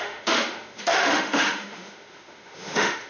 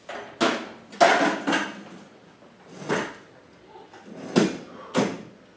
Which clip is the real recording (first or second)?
second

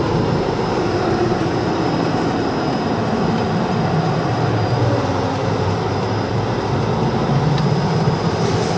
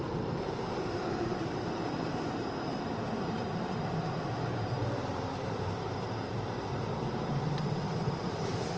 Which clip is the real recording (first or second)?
first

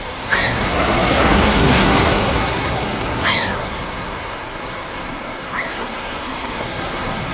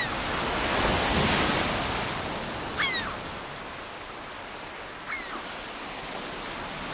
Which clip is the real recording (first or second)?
second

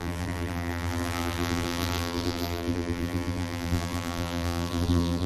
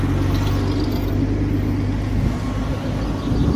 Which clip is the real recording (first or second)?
second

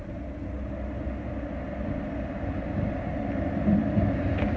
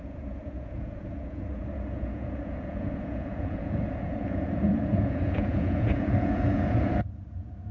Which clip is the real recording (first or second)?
first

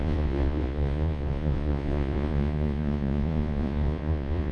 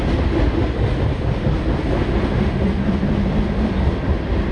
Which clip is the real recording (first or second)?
second